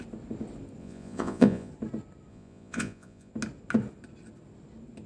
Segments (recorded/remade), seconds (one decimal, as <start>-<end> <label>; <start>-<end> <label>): 0.0-0.8 recorded; 0.8-1.7 remade; 1.7-2.3 recorded; 2.3-3.3 remade; 3.3-5.1 recorded